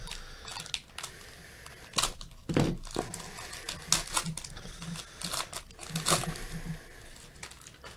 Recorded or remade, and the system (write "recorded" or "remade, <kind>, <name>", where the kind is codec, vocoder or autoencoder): recorded